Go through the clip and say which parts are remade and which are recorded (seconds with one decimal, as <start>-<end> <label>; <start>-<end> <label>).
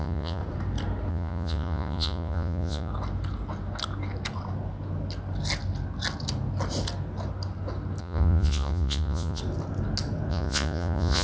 0.0-0.4 remade; 0.4-1.1 recorded; 1.1-2.9 remade; 2.9-8.0 recorded; 8.0-9.4 remade; 9.4-10.3 recorded; 10.3-11.2 remade